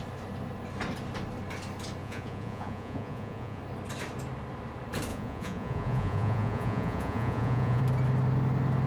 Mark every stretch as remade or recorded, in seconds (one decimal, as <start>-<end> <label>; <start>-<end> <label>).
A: 0.0-2.0 recorded; 2.0-3.6 remade; 3.6-5.1 recorded; 5.1-7.8 remade; 7.8-8.9 recorded